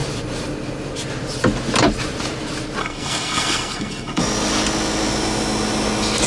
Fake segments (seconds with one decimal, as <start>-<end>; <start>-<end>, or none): 2.8-4.2